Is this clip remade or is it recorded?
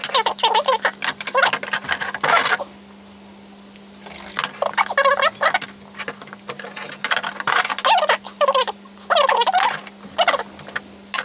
recorded